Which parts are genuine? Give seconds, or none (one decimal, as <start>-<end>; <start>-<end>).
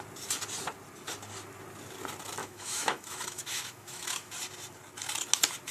0.0-2.4; 4.3-5.7